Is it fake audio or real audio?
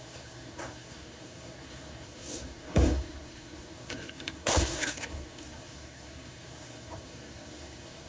fake